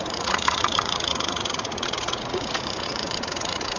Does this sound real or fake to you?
fake